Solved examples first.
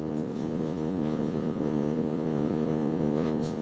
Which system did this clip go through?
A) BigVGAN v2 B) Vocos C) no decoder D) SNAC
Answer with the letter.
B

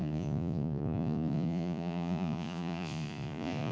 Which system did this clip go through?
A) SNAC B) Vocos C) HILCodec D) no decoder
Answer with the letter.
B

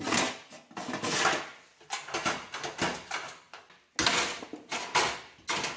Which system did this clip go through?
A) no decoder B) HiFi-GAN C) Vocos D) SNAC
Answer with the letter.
A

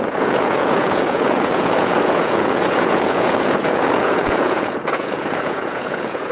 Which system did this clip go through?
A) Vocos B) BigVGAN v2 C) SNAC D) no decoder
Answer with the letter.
A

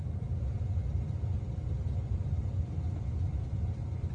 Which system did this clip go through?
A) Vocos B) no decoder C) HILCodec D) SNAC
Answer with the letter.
B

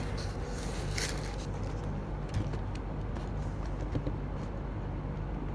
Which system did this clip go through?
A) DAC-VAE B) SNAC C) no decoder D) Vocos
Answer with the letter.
C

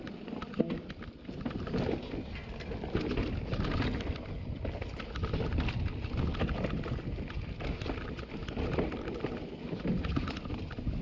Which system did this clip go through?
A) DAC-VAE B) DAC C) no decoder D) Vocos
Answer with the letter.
C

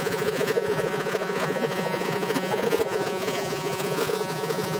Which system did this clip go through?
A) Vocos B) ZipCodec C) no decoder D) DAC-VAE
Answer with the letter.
A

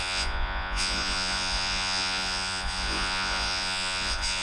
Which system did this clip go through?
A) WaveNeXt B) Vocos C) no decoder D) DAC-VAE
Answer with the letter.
B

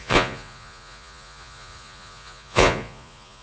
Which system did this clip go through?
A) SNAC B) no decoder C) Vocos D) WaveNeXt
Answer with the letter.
C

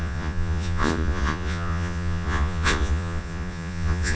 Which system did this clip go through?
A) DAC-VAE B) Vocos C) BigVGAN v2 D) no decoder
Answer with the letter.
B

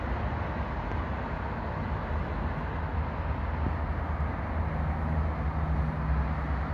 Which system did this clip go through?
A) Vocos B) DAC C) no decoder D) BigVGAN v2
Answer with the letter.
C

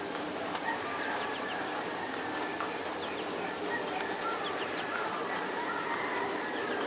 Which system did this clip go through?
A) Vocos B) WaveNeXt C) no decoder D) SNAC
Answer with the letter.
C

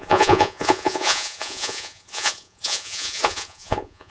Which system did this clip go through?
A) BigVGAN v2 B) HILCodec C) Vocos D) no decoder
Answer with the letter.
C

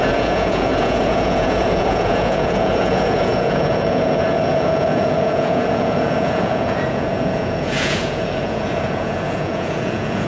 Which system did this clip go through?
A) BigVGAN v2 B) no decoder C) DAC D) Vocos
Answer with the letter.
D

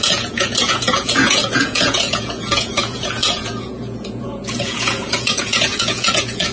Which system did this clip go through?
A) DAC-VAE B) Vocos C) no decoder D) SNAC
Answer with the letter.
B